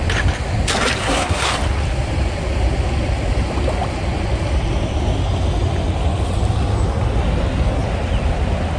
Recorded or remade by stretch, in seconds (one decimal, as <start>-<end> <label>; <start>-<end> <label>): 0.0-1.0 recorded; 1.0-1.5 remade; 1.5-8.8 recorded